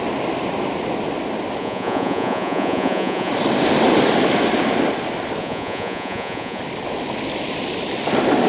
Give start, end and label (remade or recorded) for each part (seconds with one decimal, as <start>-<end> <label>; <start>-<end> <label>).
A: 0.0-1.6 recorded; 1.6-3.3 remade; 3.3-5.4 recorded; 5.4-6.6 remade; 6.6-8.5 recorded